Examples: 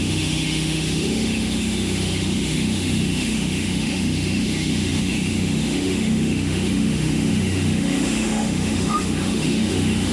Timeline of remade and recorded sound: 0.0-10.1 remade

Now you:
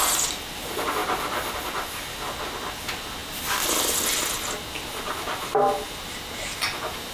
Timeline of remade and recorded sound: 0.0-7.1 recorded